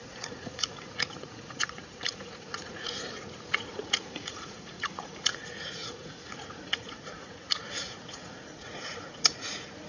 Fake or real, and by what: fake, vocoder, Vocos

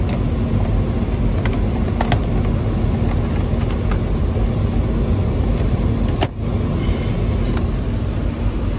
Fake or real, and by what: real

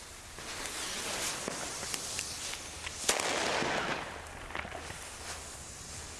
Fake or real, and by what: real